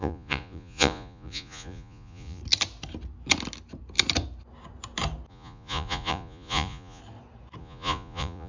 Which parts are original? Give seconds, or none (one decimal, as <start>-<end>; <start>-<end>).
2.4-5.3; 7.0-7.6